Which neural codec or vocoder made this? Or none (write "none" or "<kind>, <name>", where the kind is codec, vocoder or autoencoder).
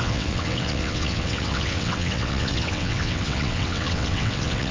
vocoder, WaveNeXt